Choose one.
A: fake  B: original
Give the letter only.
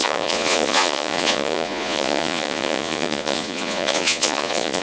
A